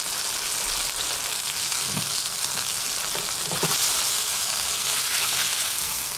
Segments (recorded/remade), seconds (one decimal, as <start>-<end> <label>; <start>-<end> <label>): 0.0-1.3 recorded; 1.3-2.9 remade; 2.9-4.1 recorded; 4.1-6.2 remade